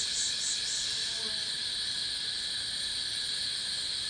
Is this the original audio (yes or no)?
yes